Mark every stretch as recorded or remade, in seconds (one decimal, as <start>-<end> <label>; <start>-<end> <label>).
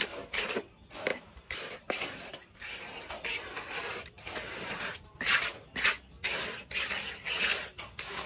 0.0-1.1 recorded; 1.1-3.1 remade; 3.1-3.9 recorded; 3.9-5.3 remade; 5.3-8.3 recorded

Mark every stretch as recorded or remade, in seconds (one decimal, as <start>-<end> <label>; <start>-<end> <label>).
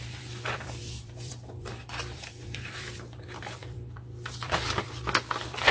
0.0-5.7 remade